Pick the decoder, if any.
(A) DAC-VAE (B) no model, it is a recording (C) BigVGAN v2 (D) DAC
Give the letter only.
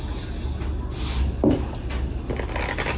B